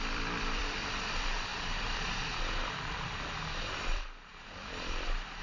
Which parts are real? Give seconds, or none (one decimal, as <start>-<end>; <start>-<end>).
none